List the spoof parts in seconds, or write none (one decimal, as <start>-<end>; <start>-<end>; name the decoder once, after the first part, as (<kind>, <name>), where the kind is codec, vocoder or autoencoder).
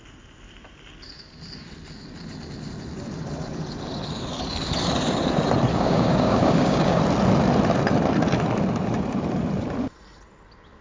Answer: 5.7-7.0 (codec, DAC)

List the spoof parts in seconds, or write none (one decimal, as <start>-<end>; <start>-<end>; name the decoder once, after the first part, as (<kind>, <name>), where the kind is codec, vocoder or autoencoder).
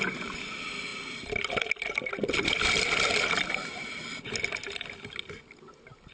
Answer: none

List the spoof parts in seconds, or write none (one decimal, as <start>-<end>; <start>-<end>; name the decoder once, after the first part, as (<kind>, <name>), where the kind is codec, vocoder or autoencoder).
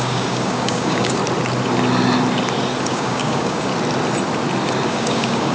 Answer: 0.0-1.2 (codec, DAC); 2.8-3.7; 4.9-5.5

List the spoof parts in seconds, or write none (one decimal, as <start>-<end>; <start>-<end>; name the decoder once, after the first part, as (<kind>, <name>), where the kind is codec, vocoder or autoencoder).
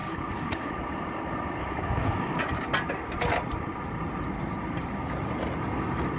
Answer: 0.0-0.7 (codec, DAC); 1.6-2.4